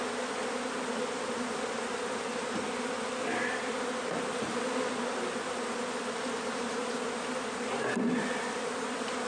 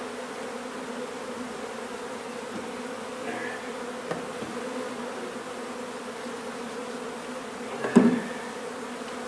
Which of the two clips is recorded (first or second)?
second